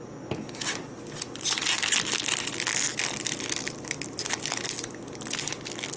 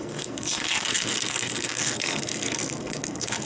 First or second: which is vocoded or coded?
second